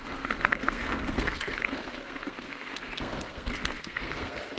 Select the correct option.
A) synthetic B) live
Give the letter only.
A